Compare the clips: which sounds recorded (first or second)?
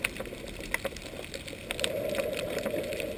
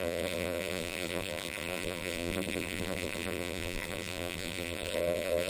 first